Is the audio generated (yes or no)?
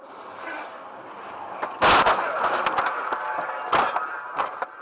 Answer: no